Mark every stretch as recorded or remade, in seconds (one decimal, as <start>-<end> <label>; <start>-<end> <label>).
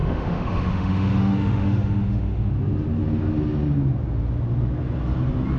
0.0-2.5 remade; 2.5-5.6 recorded